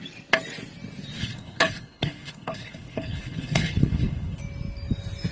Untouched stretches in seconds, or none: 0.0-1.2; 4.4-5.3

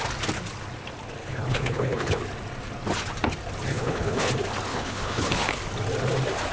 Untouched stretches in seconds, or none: 0.0-1.2; 2.2-3.7; 4.3-4.7; 5.6-6.5

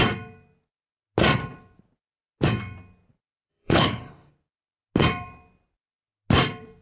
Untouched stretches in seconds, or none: 0.0-3.5; 4.3-6.8

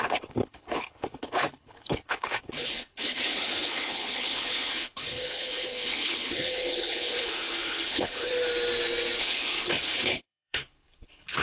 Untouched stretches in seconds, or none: 8.3-9.2